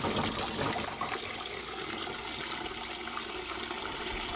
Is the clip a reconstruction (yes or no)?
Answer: no